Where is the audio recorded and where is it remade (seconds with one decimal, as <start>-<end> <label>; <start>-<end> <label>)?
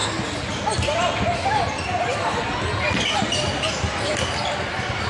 0.0-5.1 recorded